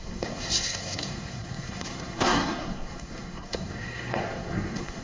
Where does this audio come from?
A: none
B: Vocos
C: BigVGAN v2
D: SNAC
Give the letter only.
D